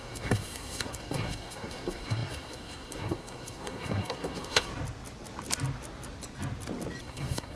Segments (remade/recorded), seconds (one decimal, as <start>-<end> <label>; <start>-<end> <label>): 0.0-4.7 remade; 4.7-7.0 recorded; 7.0-7.6 remade